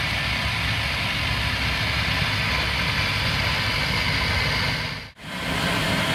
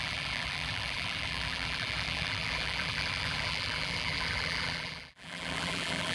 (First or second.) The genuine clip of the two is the first